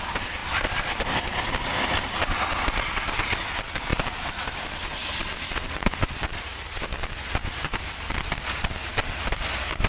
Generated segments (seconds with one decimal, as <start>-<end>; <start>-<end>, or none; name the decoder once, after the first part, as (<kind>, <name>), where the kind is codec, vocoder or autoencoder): none